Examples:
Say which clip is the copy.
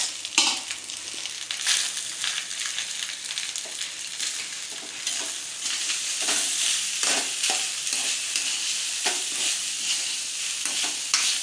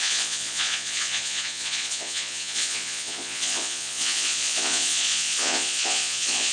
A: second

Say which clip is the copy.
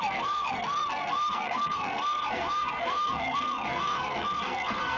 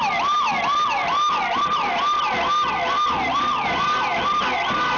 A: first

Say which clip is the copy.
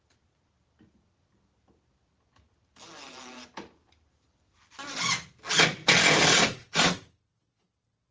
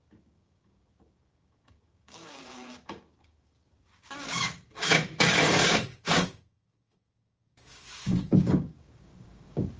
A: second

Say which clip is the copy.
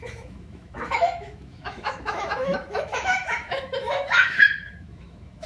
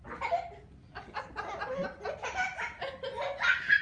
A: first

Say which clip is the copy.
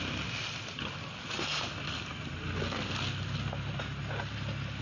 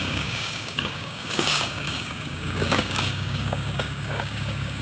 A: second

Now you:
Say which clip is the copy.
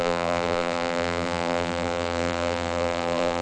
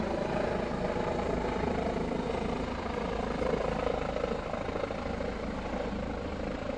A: first